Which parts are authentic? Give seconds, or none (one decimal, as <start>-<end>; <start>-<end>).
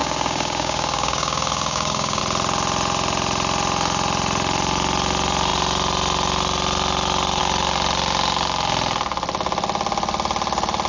2.2-10.9